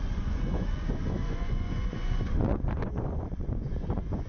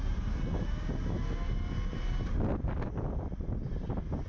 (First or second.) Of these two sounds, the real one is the second